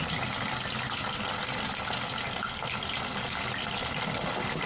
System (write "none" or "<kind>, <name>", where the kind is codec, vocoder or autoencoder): none